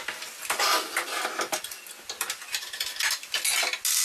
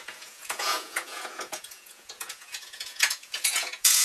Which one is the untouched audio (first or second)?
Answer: first